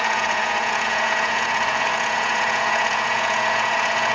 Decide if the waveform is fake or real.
fake